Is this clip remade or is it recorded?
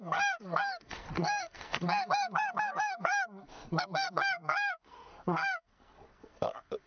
remade